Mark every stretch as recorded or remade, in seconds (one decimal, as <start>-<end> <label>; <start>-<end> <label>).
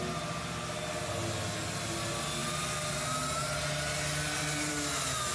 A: 0.0-5.3 recorded